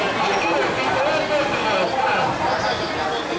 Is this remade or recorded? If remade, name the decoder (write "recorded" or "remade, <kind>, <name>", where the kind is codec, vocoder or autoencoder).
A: recorded